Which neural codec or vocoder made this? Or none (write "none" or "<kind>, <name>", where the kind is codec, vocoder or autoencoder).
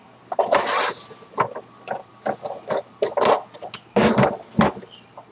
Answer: none